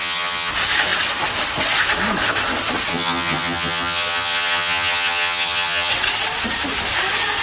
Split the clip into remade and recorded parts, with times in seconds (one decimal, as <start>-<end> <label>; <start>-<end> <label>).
0.0-0.5 remade; 0.5-2.9 recorded; 2.9-5.9 remade; 5.9-7.4 recorded